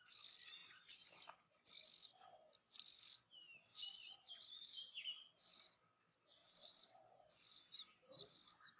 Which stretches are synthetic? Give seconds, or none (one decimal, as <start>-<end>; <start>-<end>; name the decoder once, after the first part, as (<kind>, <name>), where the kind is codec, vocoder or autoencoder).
0.6-1.1 (vocoder, BigVGAN v2); 3.7-4.3; 6.4-7.4